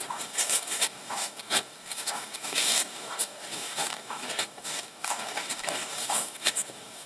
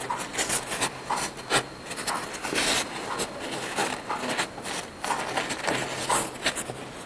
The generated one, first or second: first